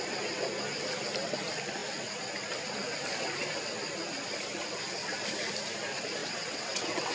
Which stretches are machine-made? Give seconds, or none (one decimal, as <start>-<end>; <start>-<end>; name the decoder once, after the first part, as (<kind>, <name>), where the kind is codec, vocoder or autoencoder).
6.2-7.1 (vocoder, WaveNeXt)